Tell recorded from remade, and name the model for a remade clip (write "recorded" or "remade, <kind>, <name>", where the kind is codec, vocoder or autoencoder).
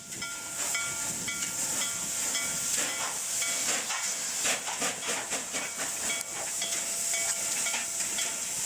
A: recorded